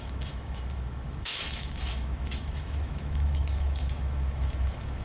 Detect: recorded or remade remade